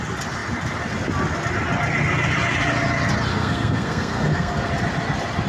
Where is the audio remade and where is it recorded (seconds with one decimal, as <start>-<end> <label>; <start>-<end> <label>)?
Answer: 0.0-3.3 recorded; 3.3-4.7 remade; 4.7-5.5 recorded

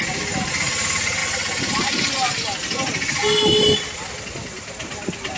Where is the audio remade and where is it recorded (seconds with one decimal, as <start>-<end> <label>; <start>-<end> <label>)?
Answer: 0.0-5.4 recorded